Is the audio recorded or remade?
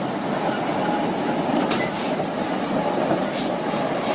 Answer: recorded